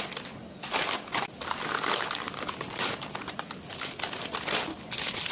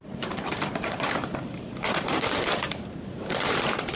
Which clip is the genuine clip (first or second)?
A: first